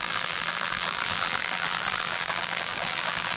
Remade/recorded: remade